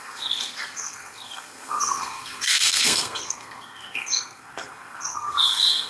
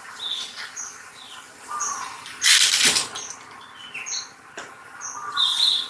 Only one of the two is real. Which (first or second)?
second